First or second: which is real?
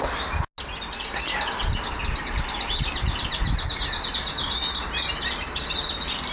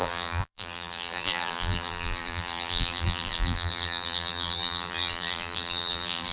first